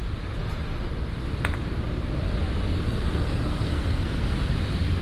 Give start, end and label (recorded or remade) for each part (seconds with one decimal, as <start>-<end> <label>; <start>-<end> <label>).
0.0-2.7 recorded; 2.7-4.5 remade; 4.5-5.0 recorded